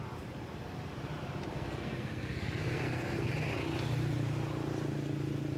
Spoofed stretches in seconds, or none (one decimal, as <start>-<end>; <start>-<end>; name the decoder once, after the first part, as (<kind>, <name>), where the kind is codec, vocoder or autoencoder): 1.5-3.3 (codec, SNAC)